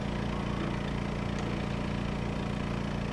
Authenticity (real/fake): real